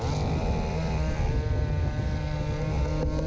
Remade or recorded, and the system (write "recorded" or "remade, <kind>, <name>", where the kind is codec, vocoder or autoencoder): recorded